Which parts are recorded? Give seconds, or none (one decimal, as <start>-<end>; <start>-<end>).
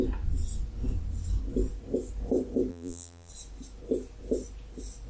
0.0-2.7; 3.3-5.1